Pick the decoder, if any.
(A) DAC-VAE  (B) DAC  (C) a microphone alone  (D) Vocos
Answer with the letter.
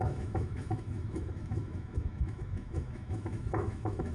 A